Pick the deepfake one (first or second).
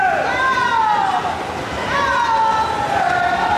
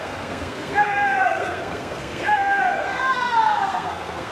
second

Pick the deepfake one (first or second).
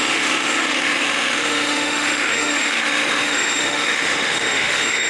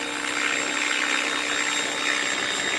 first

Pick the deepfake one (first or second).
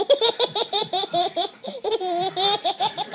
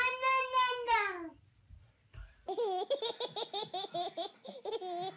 first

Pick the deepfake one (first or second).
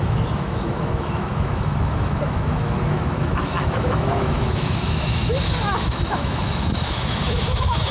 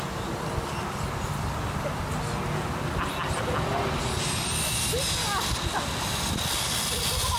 first